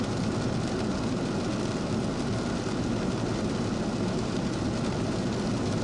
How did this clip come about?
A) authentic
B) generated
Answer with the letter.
A